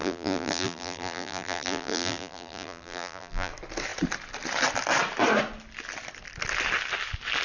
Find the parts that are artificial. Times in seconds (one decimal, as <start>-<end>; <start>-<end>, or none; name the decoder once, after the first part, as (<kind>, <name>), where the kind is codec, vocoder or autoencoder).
0.0-3.5 (vocoder, BigVGAN v2)